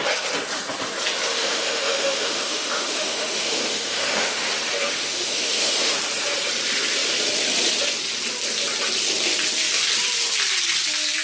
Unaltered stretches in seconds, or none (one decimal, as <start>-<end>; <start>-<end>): 0.0-1.3; 4.5-4.9; 5.9-11.2

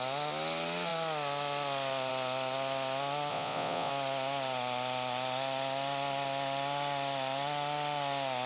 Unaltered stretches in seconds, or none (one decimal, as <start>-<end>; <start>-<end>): 0.0-3.3; 3.9-8.5

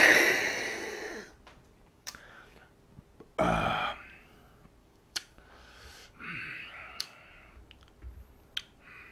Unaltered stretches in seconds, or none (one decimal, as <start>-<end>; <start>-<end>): 0.0-1.9; 2.7-4.8; 7.6-9.1

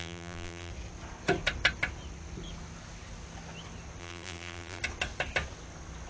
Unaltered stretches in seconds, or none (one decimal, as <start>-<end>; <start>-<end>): 0.7-4.0; 4.8-6.1

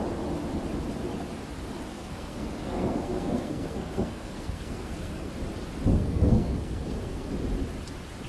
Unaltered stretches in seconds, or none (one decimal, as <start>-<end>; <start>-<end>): 0.0-1.9; 5.3-5.9; 7.3-8.3

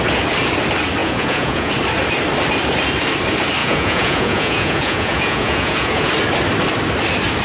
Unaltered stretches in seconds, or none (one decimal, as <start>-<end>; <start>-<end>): 0.0-1.0; 1.7-3.6; 6.1-7.4